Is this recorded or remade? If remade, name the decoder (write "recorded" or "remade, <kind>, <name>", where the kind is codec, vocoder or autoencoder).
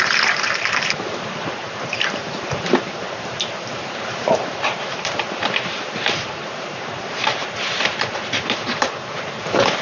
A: remade, vocoder, BigVGAN v2